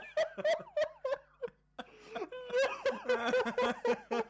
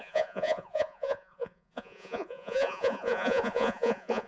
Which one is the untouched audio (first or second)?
first